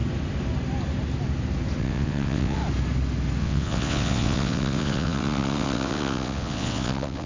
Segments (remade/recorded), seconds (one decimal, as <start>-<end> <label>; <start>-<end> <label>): 0.0-1.8 recorded; 1.8-2.6 remade; 2.6-3.4 recorded; 3.4-7.3 remade